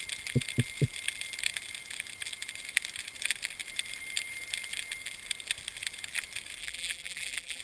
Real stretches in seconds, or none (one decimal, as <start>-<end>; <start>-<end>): 0.0-6.6